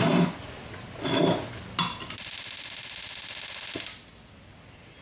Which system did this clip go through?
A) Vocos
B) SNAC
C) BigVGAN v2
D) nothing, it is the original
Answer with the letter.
D